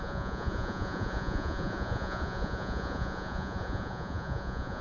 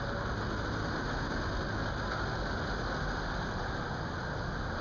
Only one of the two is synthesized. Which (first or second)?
first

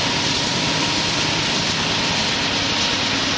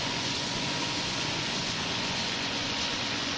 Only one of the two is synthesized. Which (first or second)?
second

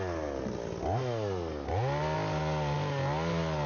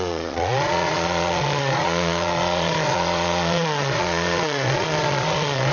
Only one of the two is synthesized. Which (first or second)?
second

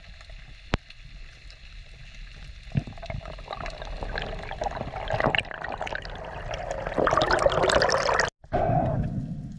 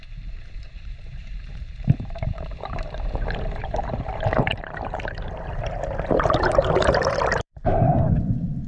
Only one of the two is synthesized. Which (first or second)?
second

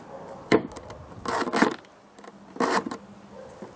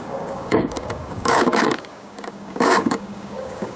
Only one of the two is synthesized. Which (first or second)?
second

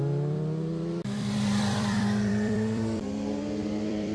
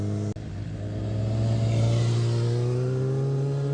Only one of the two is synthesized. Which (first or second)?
first